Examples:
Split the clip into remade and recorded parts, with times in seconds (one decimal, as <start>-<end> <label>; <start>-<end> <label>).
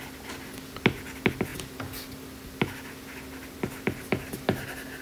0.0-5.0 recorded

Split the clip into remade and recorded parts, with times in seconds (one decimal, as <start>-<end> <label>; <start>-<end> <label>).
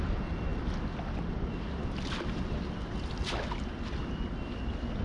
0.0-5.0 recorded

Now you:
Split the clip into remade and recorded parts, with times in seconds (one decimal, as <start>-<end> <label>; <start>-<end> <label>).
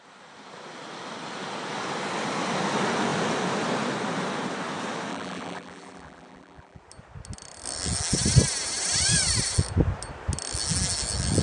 0.0-5.1 recorded; 5.1-6.8 remade; 6.8-11.4 recorded